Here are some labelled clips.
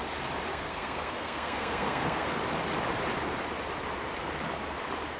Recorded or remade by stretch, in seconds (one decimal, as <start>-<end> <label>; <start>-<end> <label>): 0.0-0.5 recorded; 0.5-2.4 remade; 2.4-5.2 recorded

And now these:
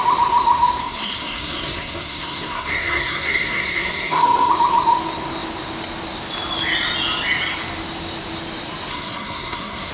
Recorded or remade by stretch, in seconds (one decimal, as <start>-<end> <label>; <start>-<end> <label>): 0.0-0.8 recorded; 0.8-4.5 remade; 4.5-8.9 recorded; 8.9-9.9 remade

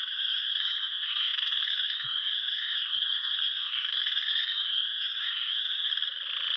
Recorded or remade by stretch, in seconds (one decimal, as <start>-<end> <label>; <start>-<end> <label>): 0.0-5.9 remade; 5.9-6.6 recorded